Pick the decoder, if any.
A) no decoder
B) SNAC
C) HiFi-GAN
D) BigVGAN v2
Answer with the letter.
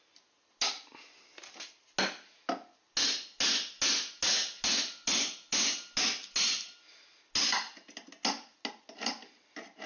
A